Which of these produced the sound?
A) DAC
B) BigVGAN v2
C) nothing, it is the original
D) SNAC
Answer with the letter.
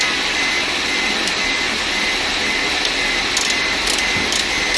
B